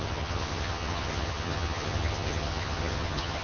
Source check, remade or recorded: remade